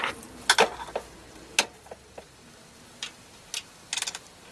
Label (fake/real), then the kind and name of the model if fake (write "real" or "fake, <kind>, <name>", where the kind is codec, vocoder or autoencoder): real